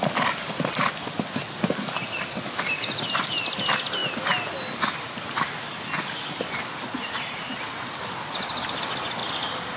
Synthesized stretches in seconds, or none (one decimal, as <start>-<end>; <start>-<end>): none